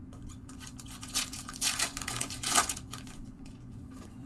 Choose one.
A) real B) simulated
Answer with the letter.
B